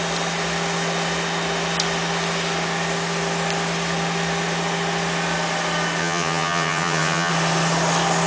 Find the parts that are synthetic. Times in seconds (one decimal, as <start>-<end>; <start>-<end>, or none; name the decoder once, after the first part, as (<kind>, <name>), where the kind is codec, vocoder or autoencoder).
6.0-7.3 (vocoder, HiFi-GAN)